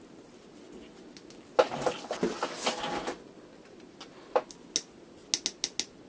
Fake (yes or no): no